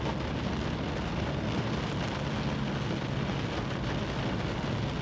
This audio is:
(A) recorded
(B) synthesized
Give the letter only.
A